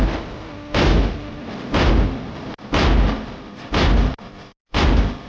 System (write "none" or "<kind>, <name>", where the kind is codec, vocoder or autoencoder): none